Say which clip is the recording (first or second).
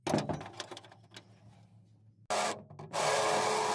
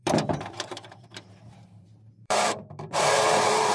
first